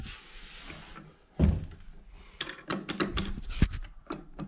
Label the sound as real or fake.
real